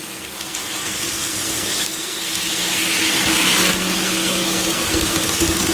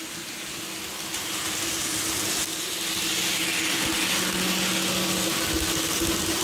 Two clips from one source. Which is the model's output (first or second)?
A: first